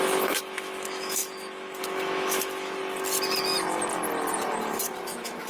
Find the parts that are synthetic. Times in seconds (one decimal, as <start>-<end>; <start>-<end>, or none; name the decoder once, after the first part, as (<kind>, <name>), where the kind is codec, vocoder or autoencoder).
0.0-2.8 (autoencoder, DAC-VAE); 4.8-5.5